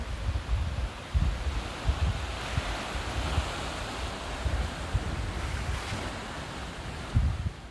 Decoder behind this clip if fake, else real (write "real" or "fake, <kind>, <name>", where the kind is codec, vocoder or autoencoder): real